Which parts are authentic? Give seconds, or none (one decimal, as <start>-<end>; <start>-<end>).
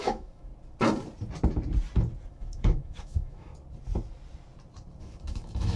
0.5-2.3; 3.5-5.0